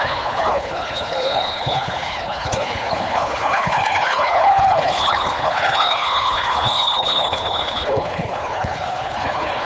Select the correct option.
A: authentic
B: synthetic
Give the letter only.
B